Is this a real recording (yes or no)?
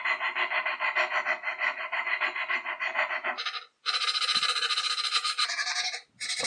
yes